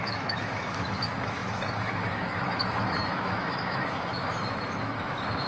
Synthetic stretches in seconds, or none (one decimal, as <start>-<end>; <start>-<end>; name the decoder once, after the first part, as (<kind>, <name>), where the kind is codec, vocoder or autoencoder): 0.0-5.5 (autoencoder, DAC-VAE)